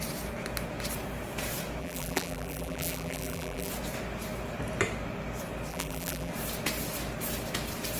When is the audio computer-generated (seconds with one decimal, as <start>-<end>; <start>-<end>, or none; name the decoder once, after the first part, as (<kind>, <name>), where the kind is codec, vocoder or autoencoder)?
1.8-3.7 (vocoder, BigVGAN v2); 5.7-6.3